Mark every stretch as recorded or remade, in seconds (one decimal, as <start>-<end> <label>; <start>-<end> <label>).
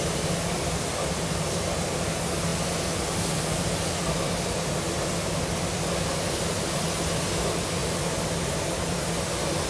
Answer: 0.0-9.7 recorded